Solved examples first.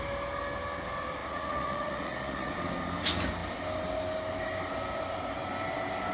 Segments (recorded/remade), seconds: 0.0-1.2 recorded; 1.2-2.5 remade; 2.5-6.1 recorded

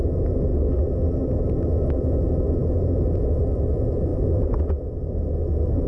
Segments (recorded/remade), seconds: 0.0-2.6 recorded; 2.6-3.3 remade; 3.3-4.1 recorded; 4.1-5.0 remade; 5.0-5.9 recorded

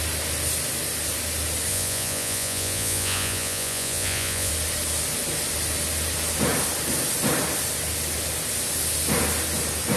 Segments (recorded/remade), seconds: 0.0-1.7 recorded; 1.7-4.5 remade; 4.5-10.0 recorded

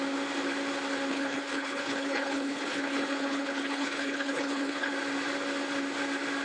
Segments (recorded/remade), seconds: 0.0-1.1 recorded; 1.1-4.9 remade; 4.9-6.4 recorded